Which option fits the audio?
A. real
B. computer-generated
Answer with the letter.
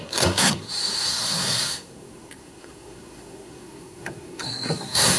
B